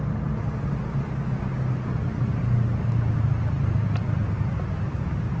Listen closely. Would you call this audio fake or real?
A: real